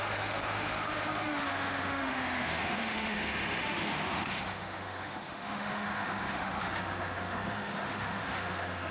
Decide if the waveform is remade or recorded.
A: remade